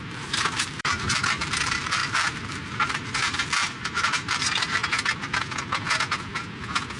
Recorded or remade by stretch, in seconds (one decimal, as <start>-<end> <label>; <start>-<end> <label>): 0.0-4.8 remade; 4.8-7.0 recorded